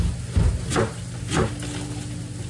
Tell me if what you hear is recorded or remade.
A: recorded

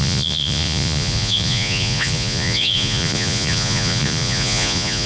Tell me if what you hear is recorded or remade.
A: remade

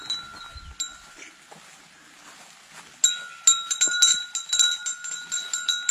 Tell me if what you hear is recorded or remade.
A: recorded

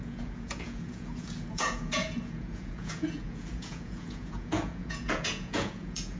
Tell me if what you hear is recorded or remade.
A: remade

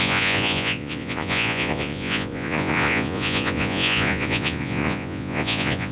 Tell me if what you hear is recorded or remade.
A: remade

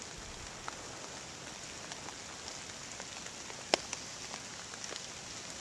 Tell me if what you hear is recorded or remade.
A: recorded